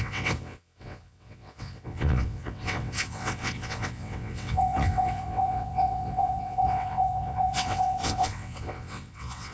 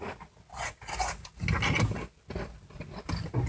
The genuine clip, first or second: second